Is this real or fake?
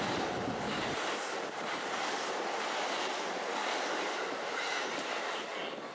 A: real